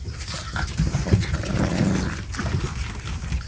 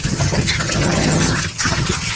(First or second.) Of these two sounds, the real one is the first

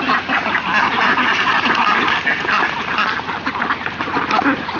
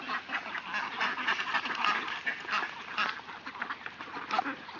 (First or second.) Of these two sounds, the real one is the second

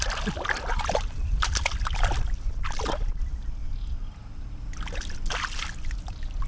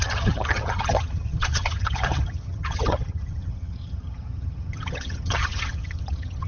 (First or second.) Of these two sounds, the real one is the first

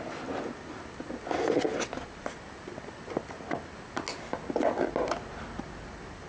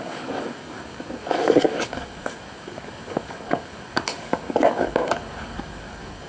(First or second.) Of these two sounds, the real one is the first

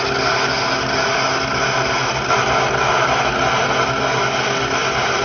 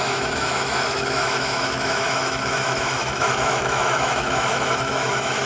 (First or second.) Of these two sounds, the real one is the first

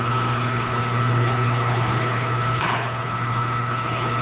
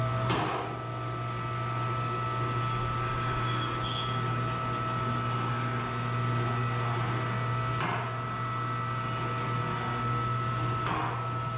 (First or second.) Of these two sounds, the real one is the second